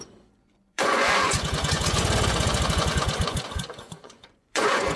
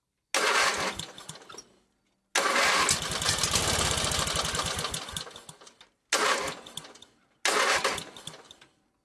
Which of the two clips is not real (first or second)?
first